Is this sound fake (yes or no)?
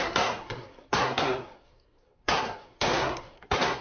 yes